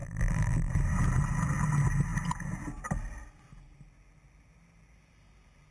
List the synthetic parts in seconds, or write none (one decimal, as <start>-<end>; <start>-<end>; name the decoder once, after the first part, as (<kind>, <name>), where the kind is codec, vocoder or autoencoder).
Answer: 0.0-0.7 (vocoder, BigVGAN v2)